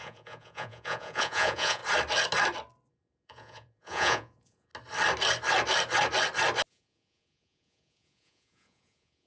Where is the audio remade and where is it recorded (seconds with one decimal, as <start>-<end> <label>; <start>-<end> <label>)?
0.0-1.8 remade; 1.8-2.9 recorded; 2.9-4.7 remade; 4.7-6.7 recorded; 6.7-9.3 remade